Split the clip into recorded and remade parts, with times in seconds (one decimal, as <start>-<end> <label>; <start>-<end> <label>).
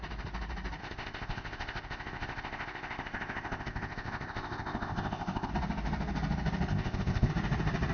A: 0.0-0.8 recorded; 0.8-5.5 remade; 5.5-6.7 recorded; 6.7-7.3 remade; 7.3-7.9 recorded